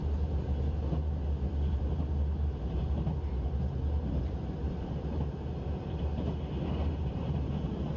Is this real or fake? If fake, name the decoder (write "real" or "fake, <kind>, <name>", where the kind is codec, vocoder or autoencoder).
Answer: real